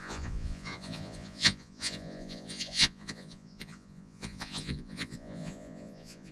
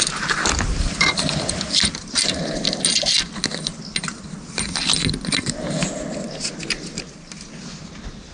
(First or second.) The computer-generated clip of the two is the first